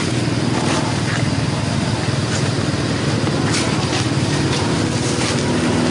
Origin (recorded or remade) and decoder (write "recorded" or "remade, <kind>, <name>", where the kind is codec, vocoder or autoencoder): recorded